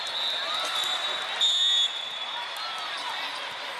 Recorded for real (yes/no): yes